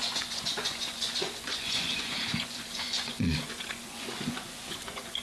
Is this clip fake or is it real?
fake